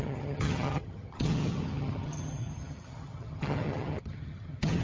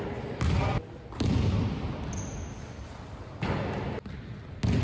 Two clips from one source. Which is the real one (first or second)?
second